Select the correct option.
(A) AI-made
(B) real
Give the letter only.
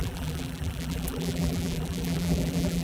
A